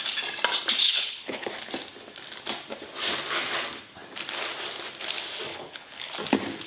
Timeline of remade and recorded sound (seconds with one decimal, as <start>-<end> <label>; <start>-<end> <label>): 0.0-0.8 recorded; 0.8-1.5 remade; 1.5-5.5 recorded; 5.5-6.1 remade; 6.1-6.7 recorded